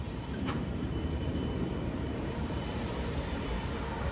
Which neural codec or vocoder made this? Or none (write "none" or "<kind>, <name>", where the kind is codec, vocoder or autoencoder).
vocoder, BigVGAN v2